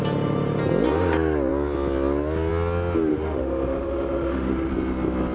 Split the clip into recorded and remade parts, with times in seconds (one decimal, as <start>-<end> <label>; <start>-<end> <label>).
0.0-3.1 recorded; 3.1-4.7 remade; 4.7-5.3 recorded